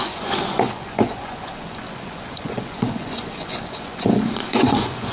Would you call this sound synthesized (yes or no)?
yes